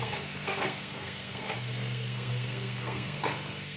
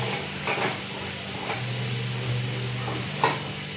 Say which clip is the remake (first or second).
first